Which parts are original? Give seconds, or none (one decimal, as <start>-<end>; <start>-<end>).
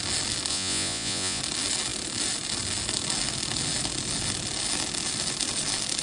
0.0-0.5; 1.4-6.0